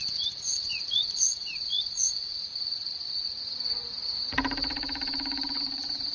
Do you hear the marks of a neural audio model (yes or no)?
yes